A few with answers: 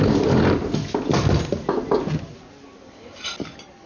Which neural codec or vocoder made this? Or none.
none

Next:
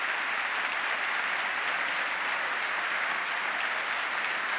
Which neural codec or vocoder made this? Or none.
none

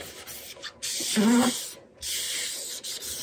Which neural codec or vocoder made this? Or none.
none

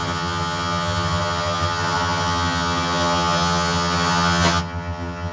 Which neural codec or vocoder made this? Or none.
vocoder, HiFi-GAN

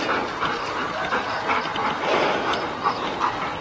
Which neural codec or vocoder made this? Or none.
none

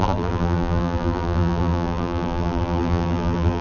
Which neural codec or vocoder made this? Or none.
vocoder, BigVGAN v2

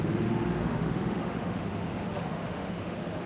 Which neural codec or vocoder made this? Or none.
autoencoder, DAC-VAE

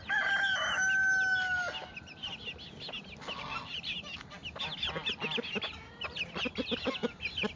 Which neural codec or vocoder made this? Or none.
none